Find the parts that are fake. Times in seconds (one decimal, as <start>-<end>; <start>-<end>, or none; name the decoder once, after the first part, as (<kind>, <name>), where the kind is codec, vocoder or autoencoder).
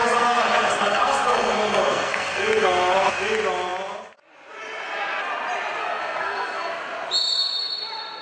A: 0.0-3.1 (codec, SNAC); 5.8-6.7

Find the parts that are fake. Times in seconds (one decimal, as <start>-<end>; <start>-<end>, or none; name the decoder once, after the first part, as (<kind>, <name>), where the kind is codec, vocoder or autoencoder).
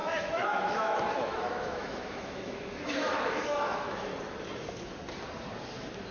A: 0.0-4.1 (autoencoder, DAC-VAE)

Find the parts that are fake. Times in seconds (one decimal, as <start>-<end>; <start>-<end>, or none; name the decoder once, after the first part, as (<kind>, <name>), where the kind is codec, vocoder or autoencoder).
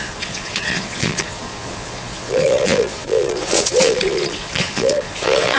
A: 0.0-5.6 (vocoder, Vocos)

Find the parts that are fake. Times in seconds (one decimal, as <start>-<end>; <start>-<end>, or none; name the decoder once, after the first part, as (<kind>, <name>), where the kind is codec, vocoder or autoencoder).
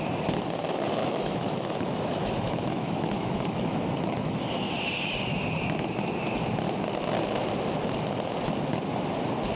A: 1.0-4.5 (autoencoder, DAC-VAE)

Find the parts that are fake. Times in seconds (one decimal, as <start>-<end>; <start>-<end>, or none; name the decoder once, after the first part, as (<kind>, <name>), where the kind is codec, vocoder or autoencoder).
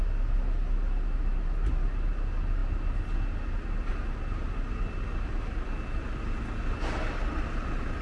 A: none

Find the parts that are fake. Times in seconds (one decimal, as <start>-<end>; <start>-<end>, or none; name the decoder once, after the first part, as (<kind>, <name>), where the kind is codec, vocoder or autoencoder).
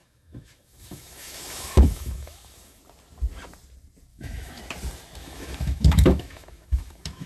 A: 0.0-2.8 (autoencoder, DAC-VAE); 4.1-4.6; 5.2-7.3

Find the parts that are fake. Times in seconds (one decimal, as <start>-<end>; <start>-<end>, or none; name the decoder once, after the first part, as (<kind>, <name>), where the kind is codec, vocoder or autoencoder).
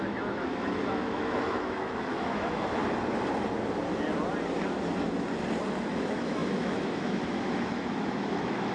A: 0.0-2.8 (autoencoder, DAC-VAE); 5.9-8.7